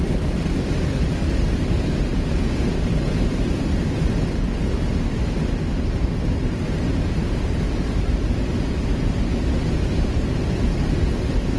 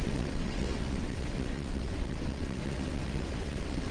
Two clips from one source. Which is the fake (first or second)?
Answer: second